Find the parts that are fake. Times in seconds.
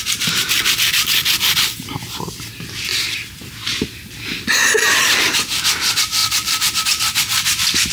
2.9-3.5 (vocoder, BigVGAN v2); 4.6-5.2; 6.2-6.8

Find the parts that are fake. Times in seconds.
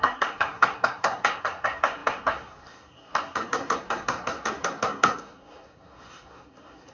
0.0-6.9 (codec, SNAC)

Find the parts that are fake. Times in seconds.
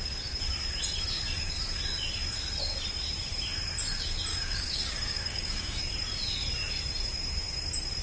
4.3-5.8 (codec, DAC)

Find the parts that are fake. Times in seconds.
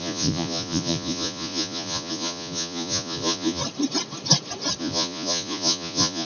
0.0-3.6 (vocoder, Vocos); 4.8-6.2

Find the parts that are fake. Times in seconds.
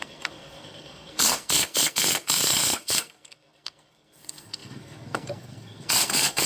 0.0-6.5 (codec, SNAC)